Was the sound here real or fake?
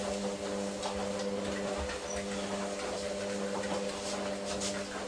real